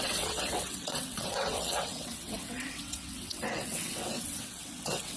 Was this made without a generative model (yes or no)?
no